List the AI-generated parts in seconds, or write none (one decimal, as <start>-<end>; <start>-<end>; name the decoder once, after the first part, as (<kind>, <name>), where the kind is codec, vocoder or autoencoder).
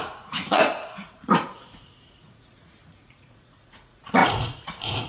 0.0-5.1 (vocoder, Vocos)